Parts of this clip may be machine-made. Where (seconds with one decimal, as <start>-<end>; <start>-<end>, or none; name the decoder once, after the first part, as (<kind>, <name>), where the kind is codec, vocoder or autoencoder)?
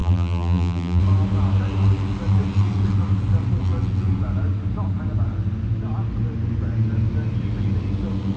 0.0-1.0 (vocoder, BigVGAN v2)